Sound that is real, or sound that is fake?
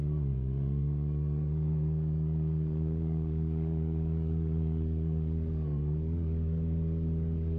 fake